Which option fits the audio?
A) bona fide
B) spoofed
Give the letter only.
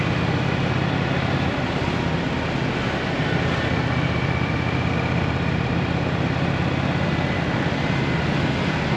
A